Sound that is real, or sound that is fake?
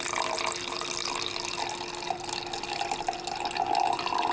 real